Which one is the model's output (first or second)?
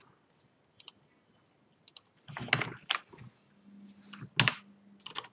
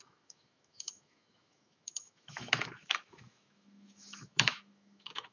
second